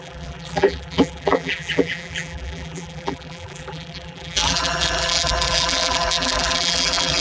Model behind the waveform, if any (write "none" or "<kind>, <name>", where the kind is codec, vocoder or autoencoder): vocoder, BigVGAN v2